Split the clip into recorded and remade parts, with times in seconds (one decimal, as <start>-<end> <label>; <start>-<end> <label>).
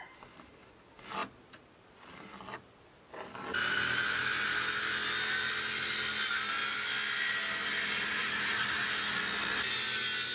0.0-10.3 recorded